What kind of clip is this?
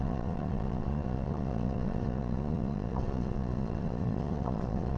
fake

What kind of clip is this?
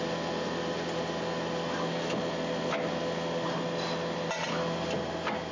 real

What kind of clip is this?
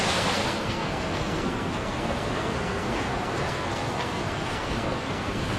fake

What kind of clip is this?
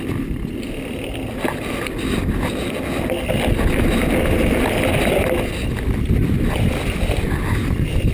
real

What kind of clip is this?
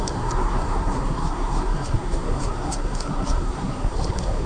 fake